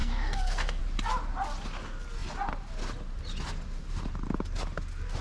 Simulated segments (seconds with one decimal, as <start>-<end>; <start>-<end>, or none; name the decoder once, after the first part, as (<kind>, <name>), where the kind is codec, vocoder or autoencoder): 0.0-0.8 (codec, SNAC)

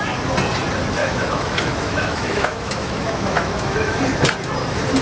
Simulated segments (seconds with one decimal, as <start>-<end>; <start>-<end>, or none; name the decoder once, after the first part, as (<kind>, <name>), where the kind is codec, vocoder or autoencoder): 1.0-4.0 (autoencoder, DAC-VAE)

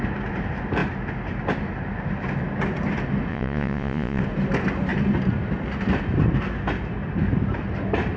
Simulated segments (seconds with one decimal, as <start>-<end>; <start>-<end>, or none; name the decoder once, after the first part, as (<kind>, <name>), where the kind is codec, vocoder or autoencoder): 3.3-4.2 (vocoder, Vocos)

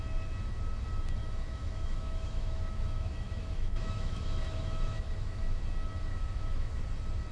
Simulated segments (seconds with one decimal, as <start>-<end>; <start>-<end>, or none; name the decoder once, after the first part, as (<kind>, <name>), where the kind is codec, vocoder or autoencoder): 1.2-5.6 (autoencoder, DAC-VAE); 6.1-6.8

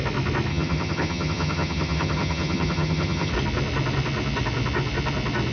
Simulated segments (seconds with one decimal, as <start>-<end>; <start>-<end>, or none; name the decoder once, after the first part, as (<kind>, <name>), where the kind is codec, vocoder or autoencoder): 0.5-3.3 (vocoder, HiFi-GAN)

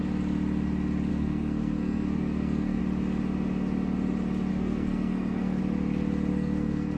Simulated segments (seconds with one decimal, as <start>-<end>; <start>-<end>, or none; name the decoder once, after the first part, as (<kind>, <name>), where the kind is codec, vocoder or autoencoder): 1.1-2.8 (codec, SNAC); 4.5-5.6; 6.3-7.0

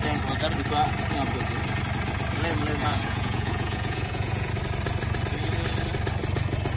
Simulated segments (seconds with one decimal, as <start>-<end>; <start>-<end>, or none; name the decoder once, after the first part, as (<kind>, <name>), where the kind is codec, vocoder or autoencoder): 2.8-4.5 (vocoder, Vocos)

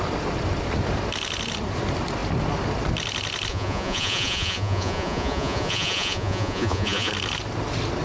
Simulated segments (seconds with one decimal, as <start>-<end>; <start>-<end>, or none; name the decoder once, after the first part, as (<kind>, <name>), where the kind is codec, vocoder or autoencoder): 3.5-7.1 (vocoder, Vocos)